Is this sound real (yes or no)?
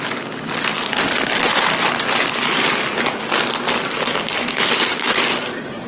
yes